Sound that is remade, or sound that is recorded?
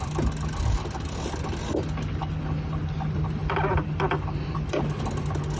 recorded